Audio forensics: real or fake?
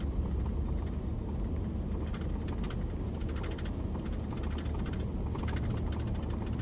real